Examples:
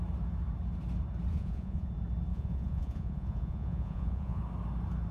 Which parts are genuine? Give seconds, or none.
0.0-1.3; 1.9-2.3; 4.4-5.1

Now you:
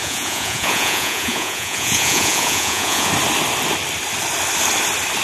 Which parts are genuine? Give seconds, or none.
3.1-5.2

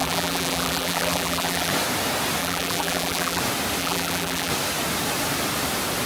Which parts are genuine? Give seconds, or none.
1.7-2.4; 3.4-3.8; 4.5-6.1

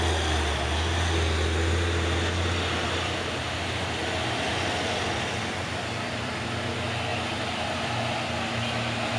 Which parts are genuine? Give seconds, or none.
0.0-4.5; 6.3-7.1; 7.9-9.2

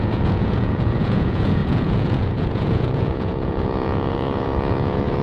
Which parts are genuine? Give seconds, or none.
none

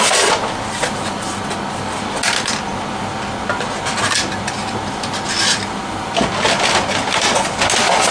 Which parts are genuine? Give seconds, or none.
0.0-8.1

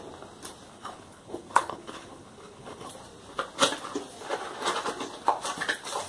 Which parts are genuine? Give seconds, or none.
0.0-0.7; 2.9-6.1